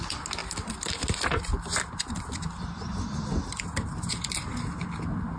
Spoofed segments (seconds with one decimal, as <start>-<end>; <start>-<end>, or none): none